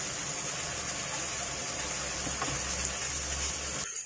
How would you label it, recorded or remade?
recorded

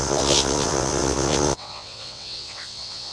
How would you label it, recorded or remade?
remade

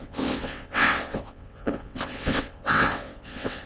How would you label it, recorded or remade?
remade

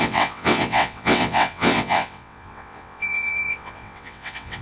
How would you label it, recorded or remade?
remade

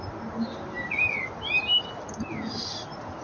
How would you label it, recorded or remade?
recorded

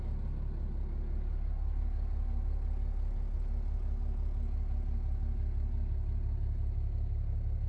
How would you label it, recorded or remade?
recorded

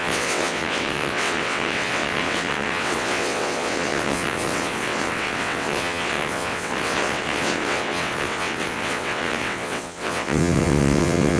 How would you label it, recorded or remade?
remade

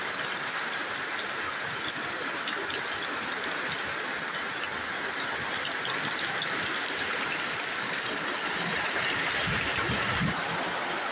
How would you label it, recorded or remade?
recorded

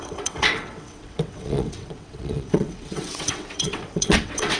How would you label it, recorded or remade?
remade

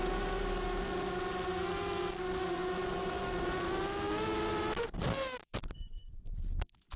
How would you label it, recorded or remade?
recorded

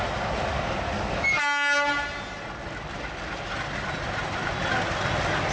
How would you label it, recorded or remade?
recorded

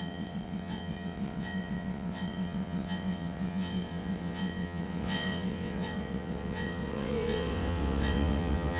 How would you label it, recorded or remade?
remade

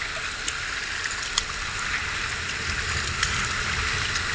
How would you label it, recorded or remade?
recorded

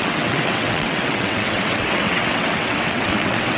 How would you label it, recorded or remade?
remade